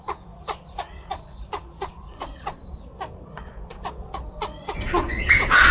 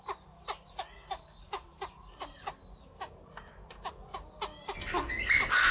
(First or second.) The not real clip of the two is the first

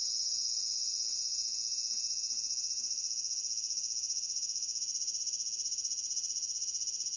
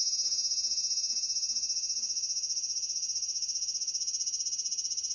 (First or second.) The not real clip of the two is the first